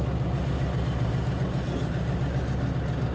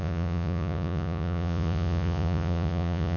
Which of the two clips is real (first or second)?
first